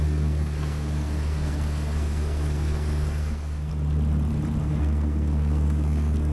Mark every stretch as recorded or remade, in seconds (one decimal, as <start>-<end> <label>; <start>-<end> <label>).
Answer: 0.0-3.7 remade; 3.7-4.6 recorded; 4.6-6.3 remade